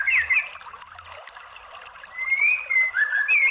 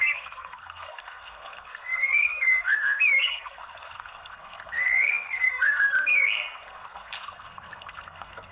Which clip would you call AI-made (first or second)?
second